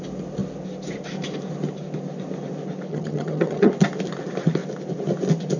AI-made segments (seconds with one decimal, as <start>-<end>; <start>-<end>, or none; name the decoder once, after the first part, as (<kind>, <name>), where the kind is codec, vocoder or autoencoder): 2.9-3.7 (vocoder, HiFi-GAN)